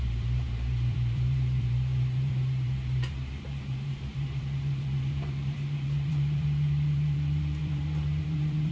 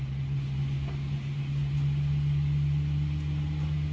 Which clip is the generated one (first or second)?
first